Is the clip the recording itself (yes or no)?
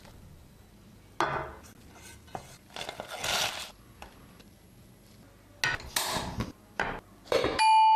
yes